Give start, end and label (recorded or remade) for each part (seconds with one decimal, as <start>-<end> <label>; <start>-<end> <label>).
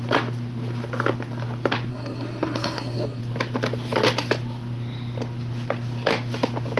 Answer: 0.0-1.9 recorded; 1.9-3.2 remade; 3.2-6.8 recorded